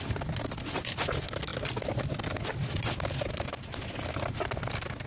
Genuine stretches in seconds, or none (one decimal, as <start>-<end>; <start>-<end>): 0.0-5.1